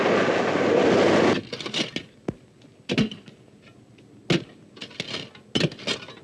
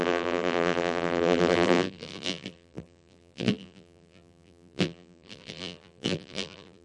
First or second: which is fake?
second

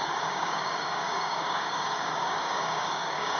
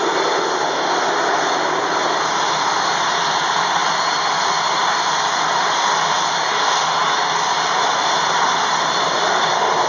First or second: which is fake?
first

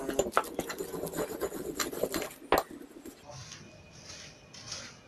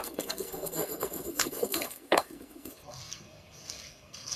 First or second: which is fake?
second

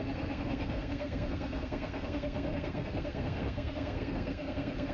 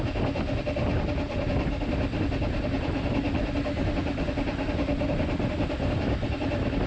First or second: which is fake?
first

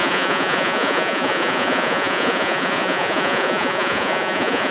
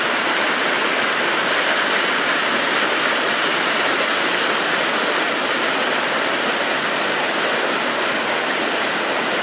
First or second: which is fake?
first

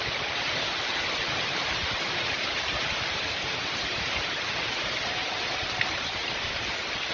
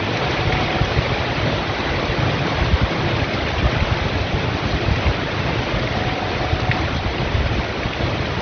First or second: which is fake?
first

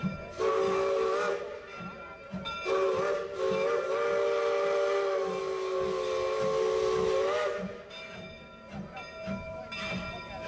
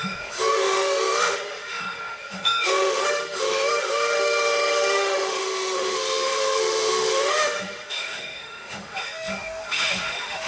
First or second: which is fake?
second